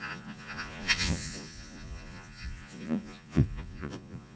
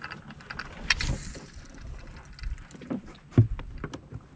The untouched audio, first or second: second